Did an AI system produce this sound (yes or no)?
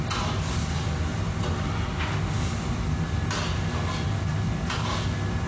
no